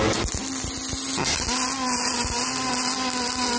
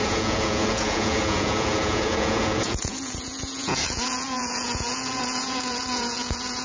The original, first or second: first